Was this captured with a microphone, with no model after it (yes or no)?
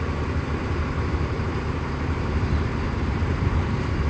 no